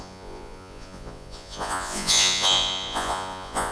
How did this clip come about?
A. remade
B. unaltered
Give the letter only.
A